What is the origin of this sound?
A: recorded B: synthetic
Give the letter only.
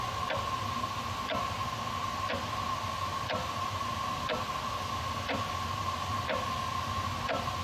A